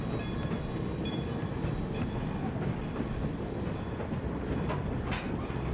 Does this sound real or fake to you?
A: real